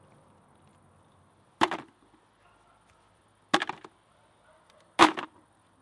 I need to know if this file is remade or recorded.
recorded